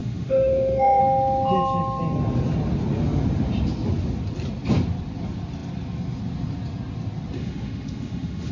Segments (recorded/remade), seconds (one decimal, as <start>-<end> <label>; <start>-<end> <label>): 0.0-1.0 remade; 1.0-7.4 recorded; 7.4-8.5 remade